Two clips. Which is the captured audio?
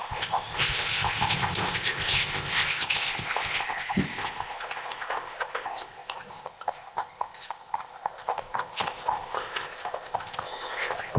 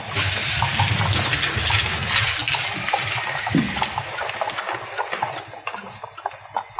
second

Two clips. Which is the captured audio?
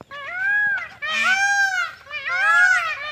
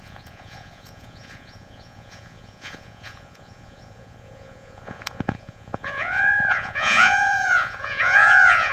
first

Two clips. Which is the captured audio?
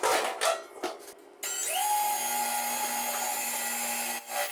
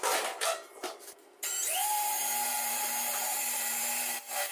first